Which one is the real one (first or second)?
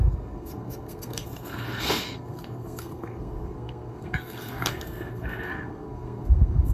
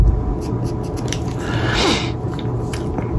second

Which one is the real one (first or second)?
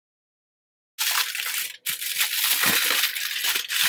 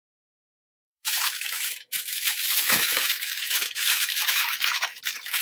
first